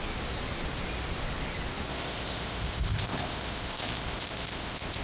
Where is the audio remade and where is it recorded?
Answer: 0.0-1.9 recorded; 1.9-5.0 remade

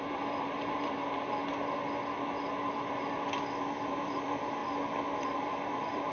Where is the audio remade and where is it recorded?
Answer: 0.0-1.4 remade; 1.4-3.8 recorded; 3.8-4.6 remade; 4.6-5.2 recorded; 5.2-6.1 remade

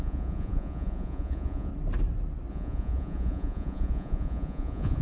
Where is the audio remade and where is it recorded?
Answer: 0.0-1.7 remade; 1.7-2.5 recorded; 2.5-5.0 remade

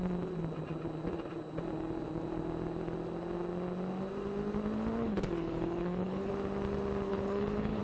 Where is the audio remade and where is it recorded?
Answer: 0.0-5.0 recorded; 5.0-6.3 remade; 6.3-7.1 recorded; 7.1-7.8 remade

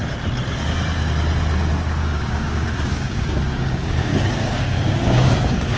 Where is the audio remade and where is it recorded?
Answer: 0.0-2.0 recorded; 2.0-5.8 remade

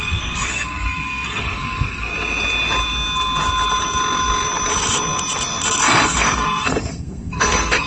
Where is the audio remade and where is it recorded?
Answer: 0.0-2.1 remade; 2.1-5.8 recorded; 5.8-7.9 remade